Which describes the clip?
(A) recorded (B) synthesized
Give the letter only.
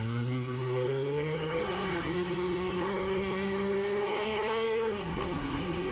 B